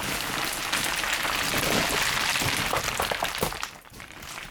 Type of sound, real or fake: real